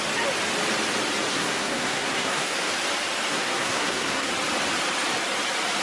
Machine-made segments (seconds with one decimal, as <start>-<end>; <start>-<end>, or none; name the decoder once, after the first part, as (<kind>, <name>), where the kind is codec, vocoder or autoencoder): 1.3-2.7 (codec, SNAC); 3.3-4.3